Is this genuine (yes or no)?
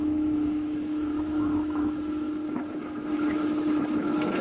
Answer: no